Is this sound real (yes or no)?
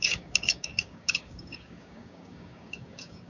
no